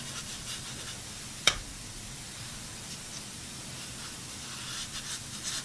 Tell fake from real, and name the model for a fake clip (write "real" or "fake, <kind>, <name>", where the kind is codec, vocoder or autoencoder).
fake, vocoder, BigVGAN v2